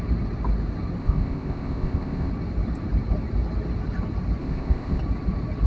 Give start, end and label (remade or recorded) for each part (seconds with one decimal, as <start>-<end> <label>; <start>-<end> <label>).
0.0-1.0 recorded; 1.0-2.3 remade; 2.3-4.4 recorded; 4.4-5.0 remade; 5.0-5.7 recorded